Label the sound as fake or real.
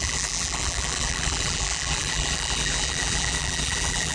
fake